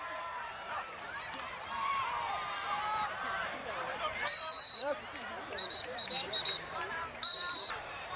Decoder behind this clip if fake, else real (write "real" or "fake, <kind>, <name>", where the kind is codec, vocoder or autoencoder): fake, vocoder, BigVGAN v2